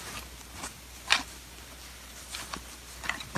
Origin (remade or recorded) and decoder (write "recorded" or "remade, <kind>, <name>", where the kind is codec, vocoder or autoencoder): recorded